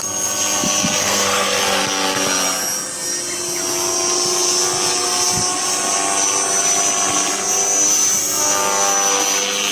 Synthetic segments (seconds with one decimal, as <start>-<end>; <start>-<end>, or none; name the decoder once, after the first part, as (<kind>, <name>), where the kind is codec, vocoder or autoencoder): 1.0-1.6 (codec, SNAC)